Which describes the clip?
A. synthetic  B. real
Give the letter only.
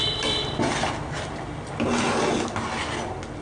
B